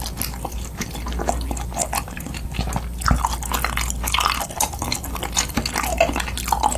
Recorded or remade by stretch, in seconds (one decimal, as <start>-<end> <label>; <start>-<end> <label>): 0.0-6.8 recorded